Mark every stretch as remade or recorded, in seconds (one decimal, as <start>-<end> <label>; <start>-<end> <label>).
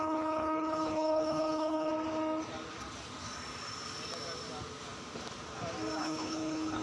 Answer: 0.0-1.9 remade; 1.9-6.0 recorded; 6.0-6.8 remade